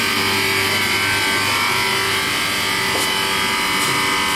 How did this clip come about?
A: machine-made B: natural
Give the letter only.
B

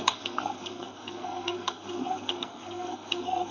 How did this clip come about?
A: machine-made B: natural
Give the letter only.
A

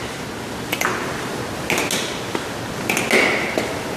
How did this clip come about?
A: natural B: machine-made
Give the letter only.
A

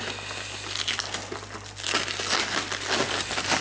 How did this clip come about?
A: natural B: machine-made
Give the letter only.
A